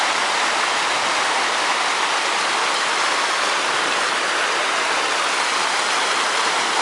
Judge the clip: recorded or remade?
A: recorded